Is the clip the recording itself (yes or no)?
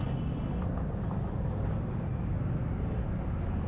yes